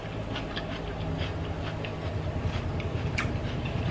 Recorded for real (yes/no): yes